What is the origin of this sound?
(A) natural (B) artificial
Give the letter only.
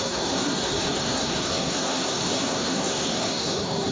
B